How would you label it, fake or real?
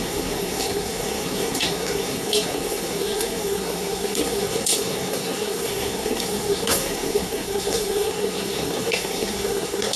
fake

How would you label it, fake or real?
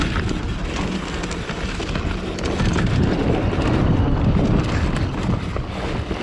real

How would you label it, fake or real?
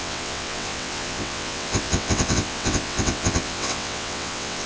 fake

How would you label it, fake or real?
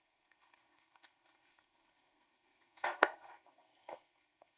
fake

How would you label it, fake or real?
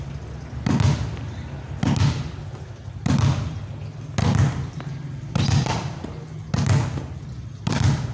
real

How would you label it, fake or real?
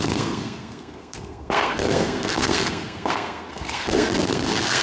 fake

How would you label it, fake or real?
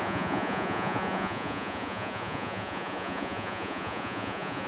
fake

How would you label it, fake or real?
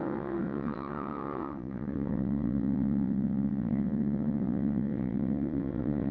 fake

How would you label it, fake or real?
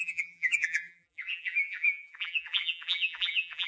fake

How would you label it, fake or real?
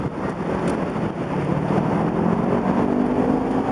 real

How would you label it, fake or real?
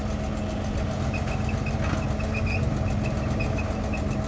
real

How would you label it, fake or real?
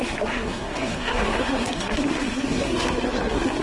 fake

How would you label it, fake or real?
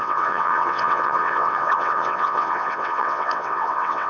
fake